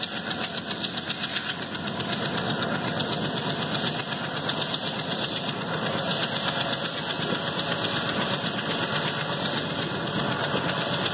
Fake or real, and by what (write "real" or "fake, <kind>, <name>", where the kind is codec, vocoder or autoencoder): real